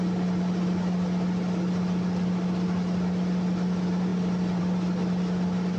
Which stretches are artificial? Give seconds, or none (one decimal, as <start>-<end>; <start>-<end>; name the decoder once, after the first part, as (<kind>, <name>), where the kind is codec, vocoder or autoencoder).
none

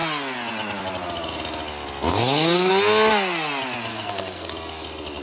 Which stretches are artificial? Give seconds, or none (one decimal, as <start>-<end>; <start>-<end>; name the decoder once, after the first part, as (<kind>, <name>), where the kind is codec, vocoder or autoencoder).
2.1-2.7 (codec, SNAC); 3.9-4.5

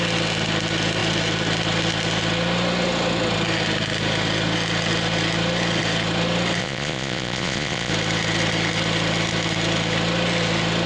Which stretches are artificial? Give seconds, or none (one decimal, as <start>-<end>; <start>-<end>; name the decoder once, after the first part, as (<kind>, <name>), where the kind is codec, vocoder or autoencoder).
6.6-7.9 (vocoder, Vocos)

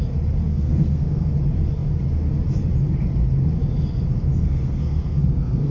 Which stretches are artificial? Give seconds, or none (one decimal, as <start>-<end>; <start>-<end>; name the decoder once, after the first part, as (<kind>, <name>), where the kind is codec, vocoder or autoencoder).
0.5-1.3 (codec, SNAC); 4.3-5.7

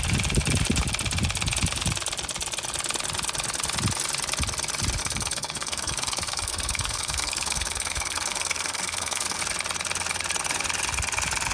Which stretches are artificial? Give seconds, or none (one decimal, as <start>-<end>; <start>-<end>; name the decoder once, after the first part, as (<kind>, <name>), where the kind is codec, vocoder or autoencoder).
5.0-9.4 (codec, SNAC)

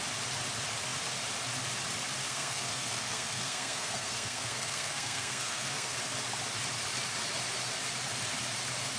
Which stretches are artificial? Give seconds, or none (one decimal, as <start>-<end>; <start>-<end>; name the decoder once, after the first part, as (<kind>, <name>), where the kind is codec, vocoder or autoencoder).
2.2-6.0 (codec, SNAC)

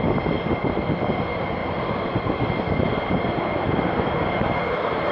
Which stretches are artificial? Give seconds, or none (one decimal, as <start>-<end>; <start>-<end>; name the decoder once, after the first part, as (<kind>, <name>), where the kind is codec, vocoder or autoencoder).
none